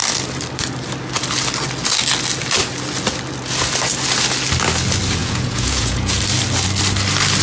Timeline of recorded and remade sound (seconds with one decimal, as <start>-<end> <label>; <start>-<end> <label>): 0.0-5.2 recorded; 5.2-6.2 remade; 6.2-7.4 recorded